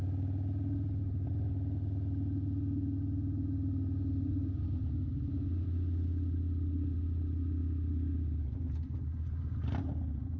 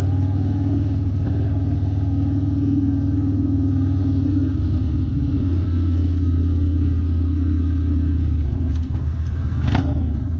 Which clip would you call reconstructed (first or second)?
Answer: second